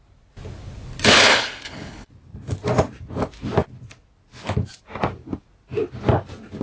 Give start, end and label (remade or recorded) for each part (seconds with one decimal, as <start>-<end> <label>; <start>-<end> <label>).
0.0-1.1 recorded; 1.1-2.1 remade; 2.1-6.6 recorded